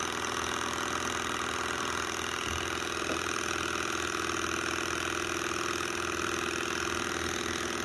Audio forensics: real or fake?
real